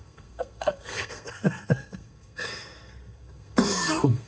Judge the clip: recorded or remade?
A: remade